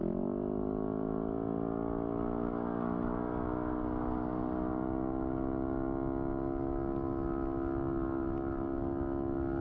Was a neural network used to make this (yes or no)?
no